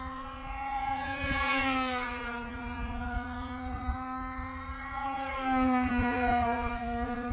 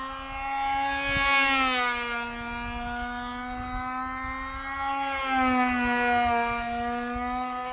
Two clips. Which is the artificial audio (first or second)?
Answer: first